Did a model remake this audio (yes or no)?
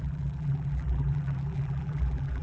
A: yes